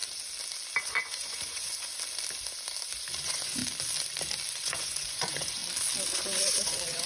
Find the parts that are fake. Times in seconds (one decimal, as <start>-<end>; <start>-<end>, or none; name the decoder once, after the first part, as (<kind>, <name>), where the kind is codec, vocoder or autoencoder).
0.8-1.9 (vocoder, Vocos); 3.2-3.6; 4.5-5.6; 6.1-7.1

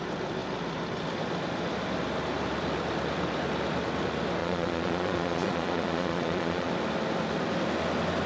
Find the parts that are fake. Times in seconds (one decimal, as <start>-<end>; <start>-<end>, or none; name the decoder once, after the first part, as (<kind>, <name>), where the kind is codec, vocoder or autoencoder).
4.4-6.7 (vocoder, Vocos)

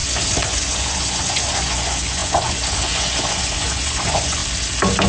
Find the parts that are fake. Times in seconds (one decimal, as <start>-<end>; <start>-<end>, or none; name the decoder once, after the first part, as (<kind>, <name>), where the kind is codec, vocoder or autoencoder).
0.0-4.4 (vocoder, Vocos)